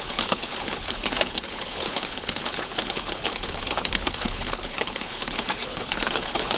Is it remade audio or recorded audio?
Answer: remade